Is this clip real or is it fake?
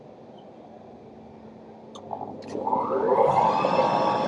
real